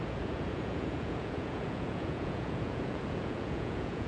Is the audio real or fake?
fake